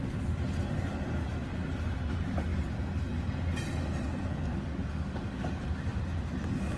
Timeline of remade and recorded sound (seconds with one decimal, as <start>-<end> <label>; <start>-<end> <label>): 0.0-4.3 recorded; 4.3-5.6 remade; 5.6-6.8 recorded